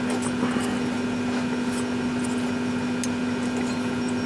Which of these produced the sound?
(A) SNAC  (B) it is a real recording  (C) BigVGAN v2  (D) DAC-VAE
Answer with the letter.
B